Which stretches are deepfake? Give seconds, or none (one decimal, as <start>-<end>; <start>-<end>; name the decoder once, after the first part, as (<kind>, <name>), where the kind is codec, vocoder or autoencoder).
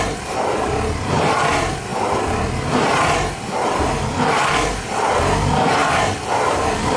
none